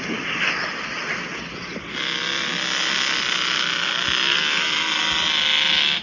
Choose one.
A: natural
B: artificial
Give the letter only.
A